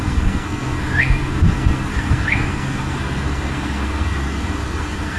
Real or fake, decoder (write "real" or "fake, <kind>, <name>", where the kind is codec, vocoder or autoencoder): fake, codec, SNAC